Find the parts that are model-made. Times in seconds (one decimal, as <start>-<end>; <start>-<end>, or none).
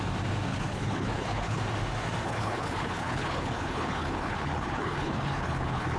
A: 0.5-1.6; 2.2-6.0